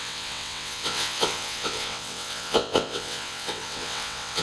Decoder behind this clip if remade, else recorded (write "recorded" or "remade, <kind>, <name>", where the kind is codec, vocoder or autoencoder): remade, vocoder, WaveNeXt